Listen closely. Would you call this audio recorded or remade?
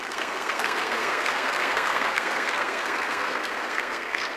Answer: remade